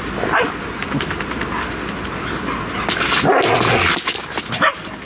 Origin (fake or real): real